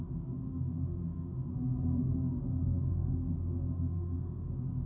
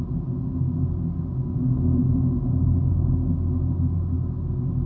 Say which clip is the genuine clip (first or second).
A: second